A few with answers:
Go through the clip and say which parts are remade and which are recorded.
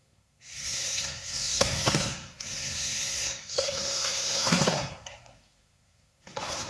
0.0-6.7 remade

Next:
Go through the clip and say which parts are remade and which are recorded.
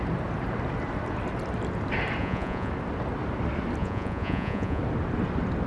0.0-2.2 recorded; 2.2-2.7 remade; 2.7-3.8 recorded; 3.8-4.8 remade; 4.8-5.7 recorded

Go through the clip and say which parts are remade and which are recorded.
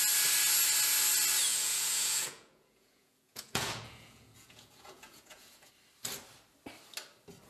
0.0-1.5 recorded; 1.5-5.7 remade; 5.7-7.5 recorded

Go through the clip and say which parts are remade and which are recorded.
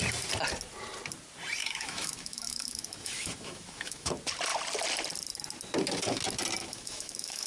0.0-1.6 recorded; 1.6-4.1 remade; 4.1-6.6 recorded; 6.6-7.5 remade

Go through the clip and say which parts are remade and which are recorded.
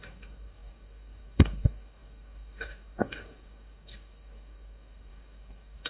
0.0-5.9 remade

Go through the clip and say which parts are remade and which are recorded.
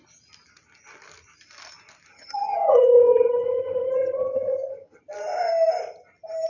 0.0-2.1 recorded; 2.1-5.0 remade; 5.0-6.5 recorded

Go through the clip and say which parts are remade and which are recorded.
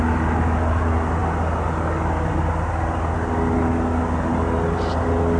0.0-5.4 recorded